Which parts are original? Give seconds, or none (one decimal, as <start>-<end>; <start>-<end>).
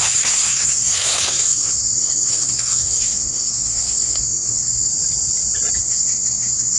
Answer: 4.9-5.8